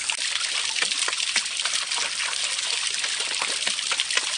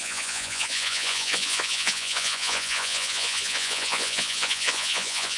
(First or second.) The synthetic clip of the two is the second